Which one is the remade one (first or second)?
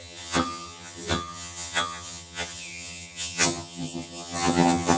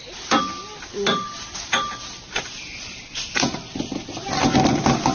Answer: first